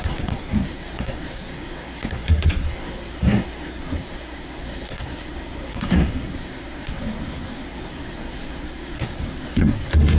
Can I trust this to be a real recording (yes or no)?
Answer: no